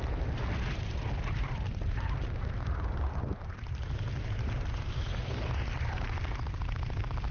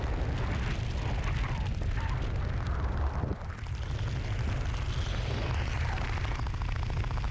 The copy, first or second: first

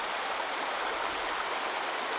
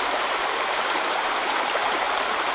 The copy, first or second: second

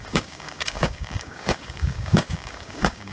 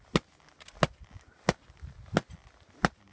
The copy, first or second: first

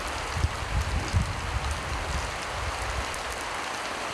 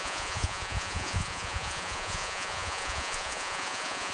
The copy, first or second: second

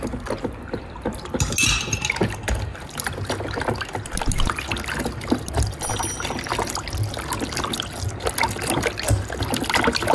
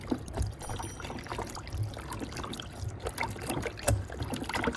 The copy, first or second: second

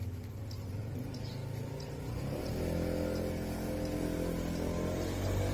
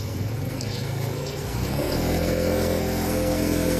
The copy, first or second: second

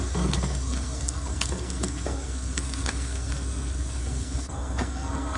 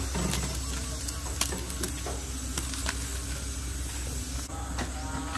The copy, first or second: first